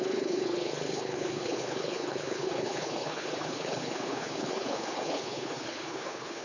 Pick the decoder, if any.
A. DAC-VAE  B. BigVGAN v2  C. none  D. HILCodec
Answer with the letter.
D